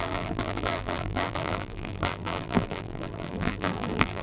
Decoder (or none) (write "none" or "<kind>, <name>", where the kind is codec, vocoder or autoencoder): vocoder, BigVGAN v2